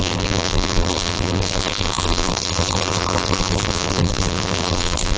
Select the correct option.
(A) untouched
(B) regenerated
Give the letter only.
B